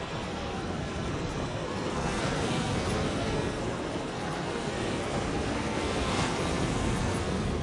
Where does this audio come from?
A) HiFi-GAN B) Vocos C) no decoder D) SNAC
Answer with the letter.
D